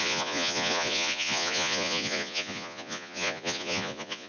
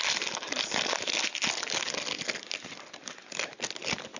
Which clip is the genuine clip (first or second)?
second